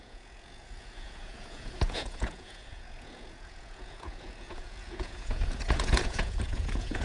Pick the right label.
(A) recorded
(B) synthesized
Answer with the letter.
B